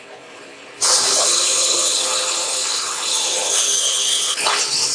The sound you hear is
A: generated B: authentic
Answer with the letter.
A